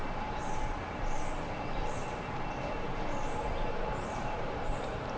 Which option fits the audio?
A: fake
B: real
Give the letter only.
A